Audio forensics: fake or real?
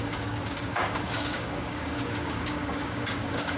fake